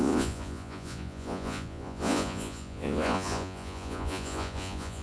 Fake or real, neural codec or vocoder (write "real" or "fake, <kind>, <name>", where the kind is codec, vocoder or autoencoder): fake, vocoder, Vocos